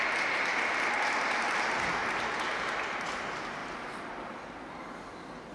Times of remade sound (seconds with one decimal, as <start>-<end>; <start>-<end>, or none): 2.0-2.7; 3.6-4.7